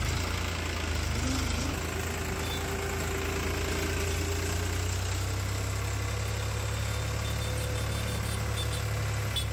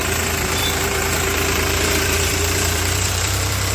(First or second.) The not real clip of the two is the second